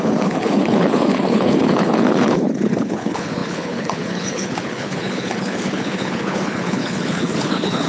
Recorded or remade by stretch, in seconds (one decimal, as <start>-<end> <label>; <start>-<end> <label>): 0.0-7.9 remade